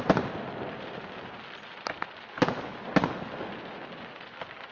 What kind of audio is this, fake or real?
real